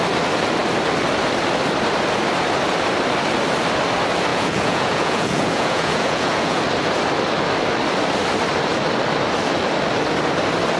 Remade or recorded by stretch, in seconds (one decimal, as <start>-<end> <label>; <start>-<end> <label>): 0.0-4.3 recorded; 4.3-6.6 remade; 6.6-10.8 recorded